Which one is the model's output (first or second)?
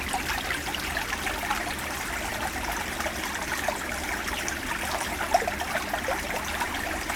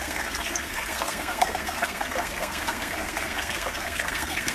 second